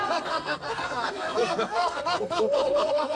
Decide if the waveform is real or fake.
fake